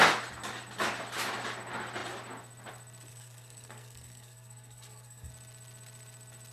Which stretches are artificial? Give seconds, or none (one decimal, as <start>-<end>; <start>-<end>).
3.1-5.3